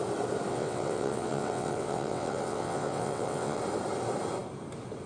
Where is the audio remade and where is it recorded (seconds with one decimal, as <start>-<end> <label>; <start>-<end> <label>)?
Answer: 0.0-0.5 recorded; 0.5-3.6 remade; 3.6-5.1 recorded